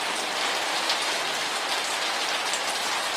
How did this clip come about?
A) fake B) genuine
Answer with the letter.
B